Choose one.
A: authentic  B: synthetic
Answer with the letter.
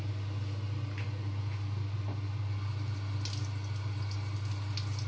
A